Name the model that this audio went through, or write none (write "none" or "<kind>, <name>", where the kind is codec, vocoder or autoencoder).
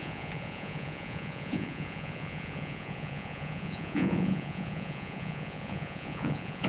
vocoder, Vocos